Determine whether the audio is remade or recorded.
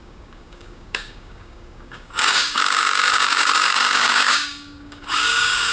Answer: remade